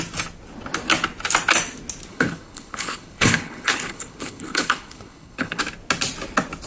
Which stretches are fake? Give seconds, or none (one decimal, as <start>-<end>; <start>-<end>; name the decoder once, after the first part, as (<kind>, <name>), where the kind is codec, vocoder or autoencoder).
2.1-5.6 (codec, HILCodec)

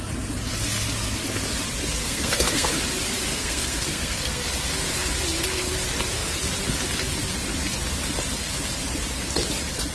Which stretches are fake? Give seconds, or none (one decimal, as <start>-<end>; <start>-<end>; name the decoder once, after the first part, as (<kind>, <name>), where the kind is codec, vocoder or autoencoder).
2.0-2.7 (codec, SNAC); 3.3-4.5

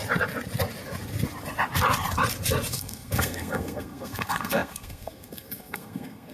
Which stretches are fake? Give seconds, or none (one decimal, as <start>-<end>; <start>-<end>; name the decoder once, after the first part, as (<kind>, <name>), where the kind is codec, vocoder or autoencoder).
2.7-6.3 (codec, SNAC)

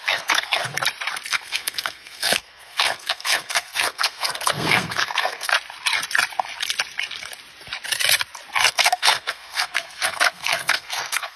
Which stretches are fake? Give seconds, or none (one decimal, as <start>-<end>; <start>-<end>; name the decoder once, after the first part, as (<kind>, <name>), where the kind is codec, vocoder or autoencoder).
0.0-0.7 (codec, SNAC); 1.3-5.5; 8.7-11.4

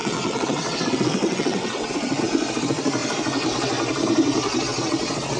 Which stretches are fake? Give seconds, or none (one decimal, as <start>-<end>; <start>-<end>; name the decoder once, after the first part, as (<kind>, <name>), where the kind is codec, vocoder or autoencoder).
0.0-2.2 (vocoder, WaveNeXt)

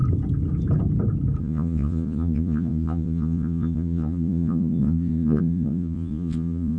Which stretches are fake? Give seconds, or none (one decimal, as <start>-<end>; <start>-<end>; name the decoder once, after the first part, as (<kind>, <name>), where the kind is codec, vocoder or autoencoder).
1.4-6.8 (vocoder, Vocos)

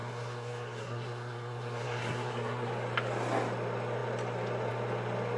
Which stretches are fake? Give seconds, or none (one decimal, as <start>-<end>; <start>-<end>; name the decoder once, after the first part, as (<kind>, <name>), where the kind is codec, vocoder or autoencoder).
0.0-2.7 (codec, SNAC)

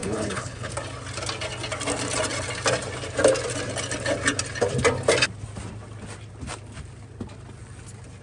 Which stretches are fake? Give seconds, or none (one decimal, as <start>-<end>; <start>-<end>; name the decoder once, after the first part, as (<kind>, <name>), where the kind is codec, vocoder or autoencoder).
0.0-0.7 (codec, HILCodec)